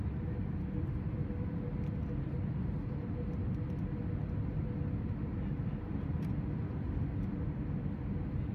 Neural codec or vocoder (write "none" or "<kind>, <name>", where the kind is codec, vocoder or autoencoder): none